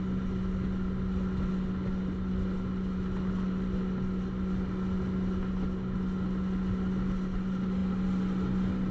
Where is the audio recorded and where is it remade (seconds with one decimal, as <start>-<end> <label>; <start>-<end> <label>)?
0.0-8.9 recorded